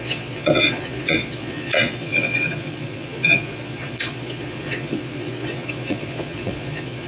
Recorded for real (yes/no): no